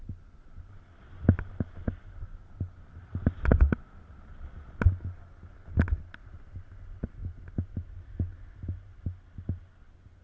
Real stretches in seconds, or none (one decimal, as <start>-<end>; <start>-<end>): 0.0-10.2